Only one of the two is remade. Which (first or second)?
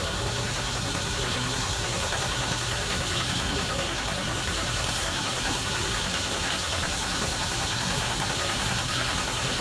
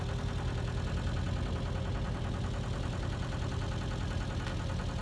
first